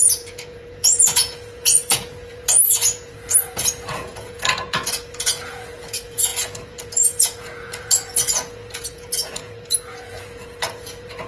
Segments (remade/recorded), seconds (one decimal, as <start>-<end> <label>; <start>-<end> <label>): 0.0-11.3 remade